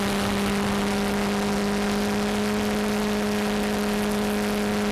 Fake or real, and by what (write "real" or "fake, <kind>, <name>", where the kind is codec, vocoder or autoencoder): real